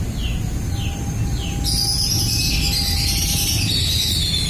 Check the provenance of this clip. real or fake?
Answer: real